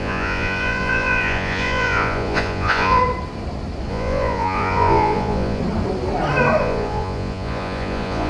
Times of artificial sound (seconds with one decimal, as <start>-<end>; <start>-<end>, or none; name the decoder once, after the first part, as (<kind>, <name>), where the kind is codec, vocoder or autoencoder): 0.0-3.0 (vocoder, Vocos); 3.9-5.6; 6.6-8.3